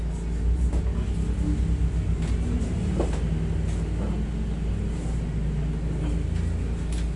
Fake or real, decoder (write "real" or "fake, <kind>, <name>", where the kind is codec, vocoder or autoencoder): real